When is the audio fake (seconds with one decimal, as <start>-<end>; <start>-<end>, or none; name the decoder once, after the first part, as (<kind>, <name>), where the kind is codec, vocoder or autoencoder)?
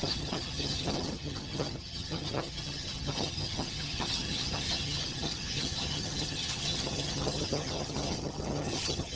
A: 0.0-9.2 (vocoder, HiFi-GAN)